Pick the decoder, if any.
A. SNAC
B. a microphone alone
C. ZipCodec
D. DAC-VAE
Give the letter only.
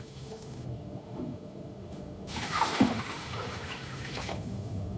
D